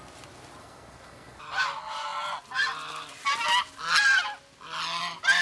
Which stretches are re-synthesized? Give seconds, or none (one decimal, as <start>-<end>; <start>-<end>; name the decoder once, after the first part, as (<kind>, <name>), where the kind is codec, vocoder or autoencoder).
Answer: 0.6-1.4 (codec, SNAC)